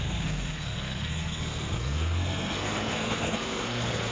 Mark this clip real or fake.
fake